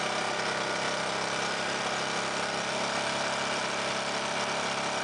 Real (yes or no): yes